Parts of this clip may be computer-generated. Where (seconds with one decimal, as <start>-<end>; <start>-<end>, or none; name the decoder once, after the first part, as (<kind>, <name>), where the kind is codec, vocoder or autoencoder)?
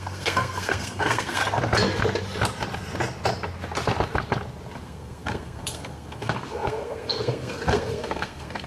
0.0-1.4 (codec, SNAC); 4.8-8.7